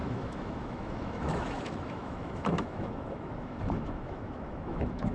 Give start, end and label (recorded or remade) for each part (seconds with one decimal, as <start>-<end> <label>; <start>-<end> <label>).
0.0-5.1 remade